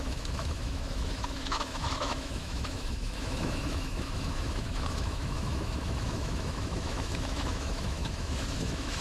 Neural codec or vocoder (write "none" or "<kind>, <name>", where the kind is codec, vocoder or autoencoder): autoencoder, DAC-VAE